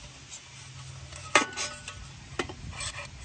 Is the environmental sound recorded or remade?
recorded